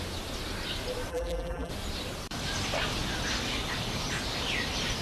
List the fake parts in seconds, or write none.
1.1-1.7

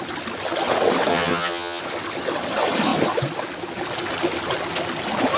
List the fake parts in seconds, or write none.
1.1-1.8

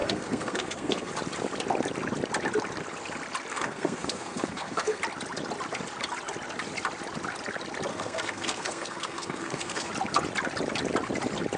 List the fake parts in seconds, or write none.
0.0-1.1; 3.5-5.0; 7.9-9.9

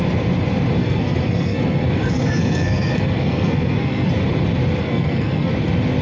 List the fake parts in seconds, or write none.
0.8-4.1; 4.8-5.5